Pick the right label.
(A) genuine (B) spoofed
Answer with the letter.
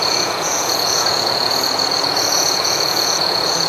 B